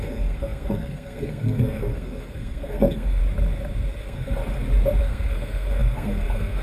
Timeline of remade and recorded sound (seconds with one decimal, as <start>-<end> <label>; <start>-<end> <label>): 0.0-3.2 remade; 3.2-4.0 recorded; 4.0-4.4 remade; 4.4-5.0 recorded; 5.0-6.6 remade